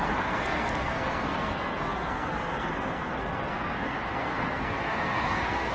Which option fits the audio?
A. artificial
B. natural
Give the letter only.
A